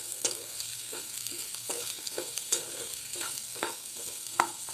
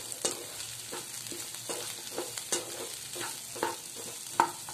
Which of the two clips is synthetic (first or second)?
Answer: first